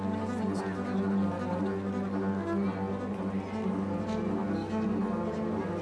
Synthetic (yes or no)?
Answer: no